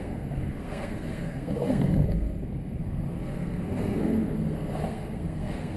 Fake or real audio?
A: fake